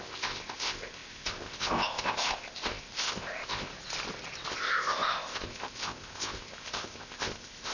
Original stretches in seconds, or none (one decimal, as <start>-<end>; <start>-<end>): 3.7-4.5